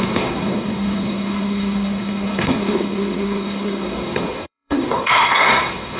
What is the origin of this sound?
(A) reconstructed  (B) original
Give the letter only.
A